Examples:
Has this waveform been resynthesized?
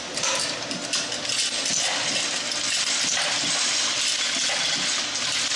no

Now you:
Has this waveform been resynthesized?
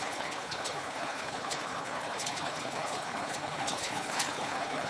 yes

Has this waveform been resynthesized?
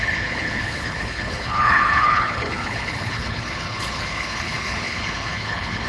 yes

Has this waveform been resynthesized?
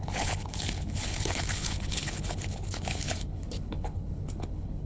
yes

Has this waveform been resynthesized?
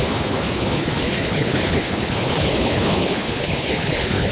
yes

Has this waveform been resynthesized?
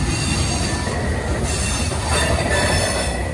no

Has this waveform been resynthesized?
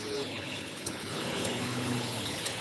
yes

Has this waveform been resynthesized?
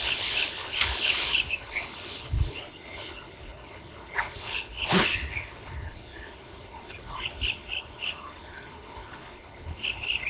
yes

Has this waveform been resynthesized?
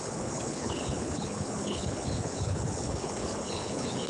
yes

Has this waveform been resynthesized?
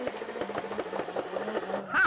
no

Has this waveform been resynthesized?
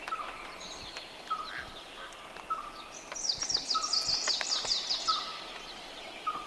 no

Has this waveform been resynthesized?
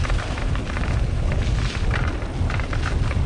no